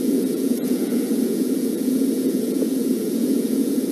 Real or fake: fake